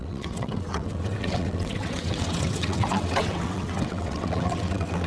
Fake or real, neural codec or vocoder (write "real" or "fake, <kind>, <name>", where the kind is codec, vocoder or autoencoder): fake, vocoder, WaveNeXt